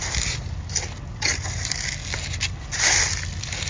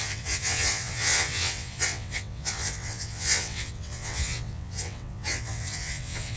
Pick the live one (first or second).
first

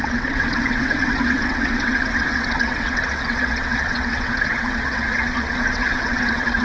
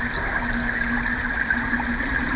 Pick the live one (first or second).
second